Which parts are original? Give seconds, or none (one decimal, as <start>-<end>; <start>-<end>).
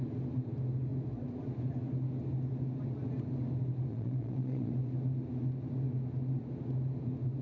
0.0-3.9; 4.7-7.4